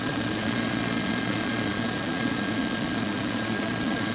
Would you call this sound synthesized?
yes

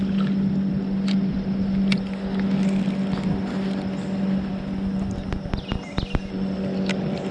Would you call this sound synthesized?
no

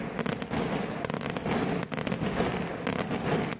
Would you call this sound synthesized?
no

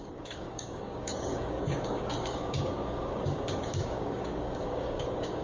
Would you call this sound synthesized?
yes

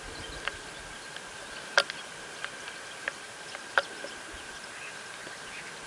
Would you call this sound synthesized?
no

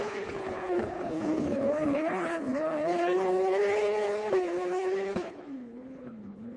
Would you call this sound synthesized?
yes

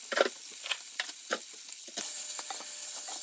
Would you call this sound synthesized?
no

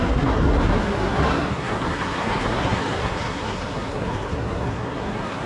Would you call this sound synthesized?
yes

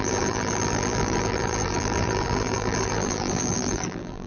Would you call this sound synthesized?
yes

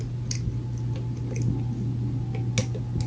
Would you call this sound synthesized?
no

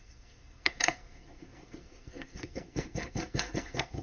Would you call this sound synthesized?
yes